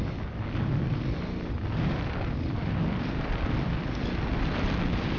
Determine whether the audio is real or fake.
real